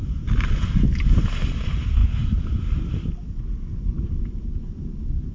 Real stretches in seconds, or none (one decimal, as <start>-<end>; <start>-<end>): 0.0-5.3